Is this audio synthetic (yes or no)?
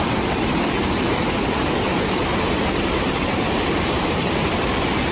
yes